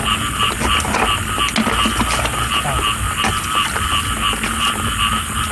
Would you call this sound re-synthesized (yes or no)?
no